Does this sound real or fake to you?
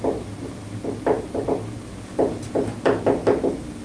real